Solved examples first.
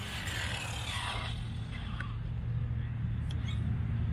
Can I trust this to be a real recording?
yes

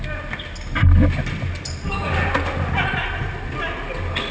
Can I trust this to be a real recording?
yes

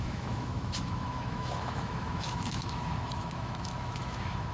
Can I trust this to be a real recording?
no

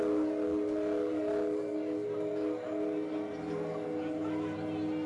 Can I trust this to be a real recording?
yes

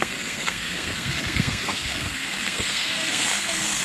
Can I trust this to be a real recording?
no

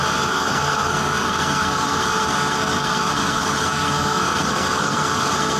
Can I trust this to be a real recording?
no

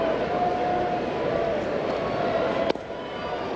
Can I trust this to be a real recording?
yes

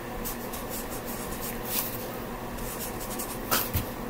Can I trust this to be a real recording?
yes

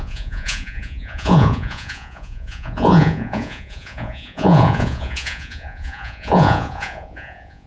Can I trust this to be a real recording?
no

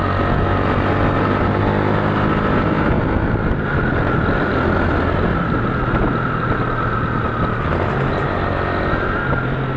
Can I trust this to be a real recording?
yes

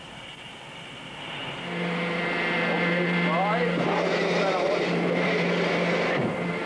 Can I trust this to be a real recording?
yes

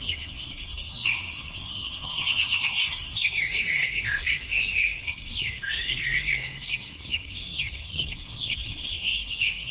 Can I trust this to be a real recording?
no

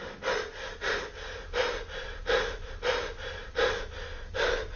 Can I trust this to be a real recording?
yes